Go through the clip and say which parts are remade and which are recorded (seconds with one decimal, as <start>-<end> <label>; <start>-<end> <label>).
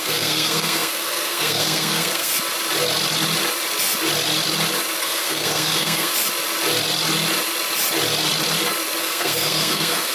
0.0-2.3 remade; 2.3-5.0 recorded; 5.0-6.1 remade; 6.1-9.0 recorded; 9.0-10.1 remade